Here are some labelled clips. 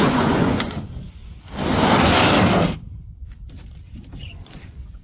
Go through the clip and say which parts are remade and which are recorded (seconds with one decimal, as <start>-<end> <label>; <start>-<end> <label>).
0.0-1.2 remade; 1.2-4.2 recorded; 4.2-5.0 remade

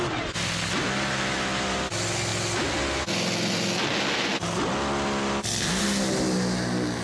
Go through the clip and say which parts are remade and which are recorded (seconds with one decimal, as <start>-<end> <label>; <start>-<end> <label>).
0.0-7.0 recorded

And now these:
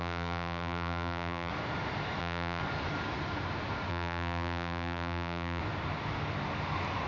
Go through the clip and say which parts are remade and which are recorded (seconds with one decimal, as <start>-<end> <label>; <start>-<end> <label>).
0.0-1.5 remade; 1.5-2.2 recorded; 2.2-2.6 remade; 2.6-3.9 recorded; 3.9-5.6 remade; 5.6-7.1 recorded